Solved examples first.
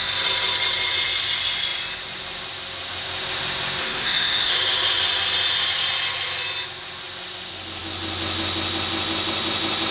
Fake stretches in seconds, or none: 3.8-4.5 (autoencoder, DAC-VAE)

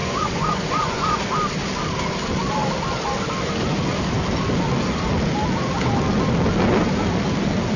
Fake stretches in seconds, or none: 0.0-1.2 (vocoder, Vocos)